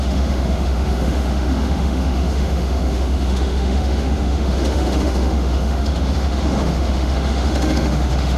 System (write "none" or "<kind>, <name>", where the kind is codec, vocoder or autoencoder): autoencoder, DAC-VAE